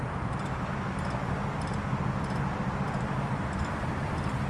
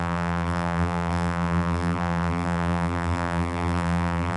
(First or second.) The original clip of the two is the first